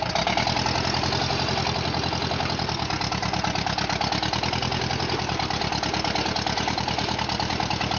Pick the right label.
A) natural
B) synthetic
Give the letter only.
A